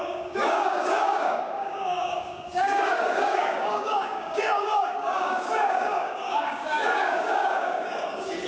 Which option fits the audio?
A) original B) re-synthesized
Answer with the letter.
B